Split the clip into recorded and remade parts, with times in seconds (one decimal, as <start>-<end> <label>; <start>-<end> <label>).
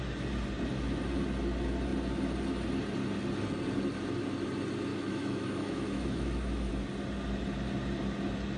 0.0-4.9 recorded; 4.9-6.7 remade; 6.7-8.6 recorded